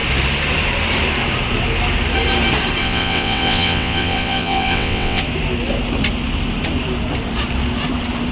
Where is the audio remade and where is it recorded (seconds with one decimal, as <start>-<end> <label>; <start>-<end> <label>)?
0.0-2.8 recorded; 2.8-5.2 remade; 5.2-8.3 recorded